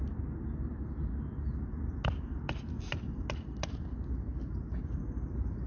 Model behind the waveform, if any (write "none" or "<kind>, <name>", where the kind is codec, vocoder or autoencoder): none